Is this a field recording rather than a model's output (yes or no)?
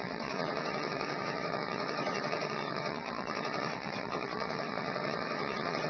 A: no